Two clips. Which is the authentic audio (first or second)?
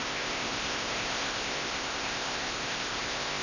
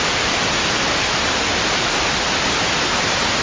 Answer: second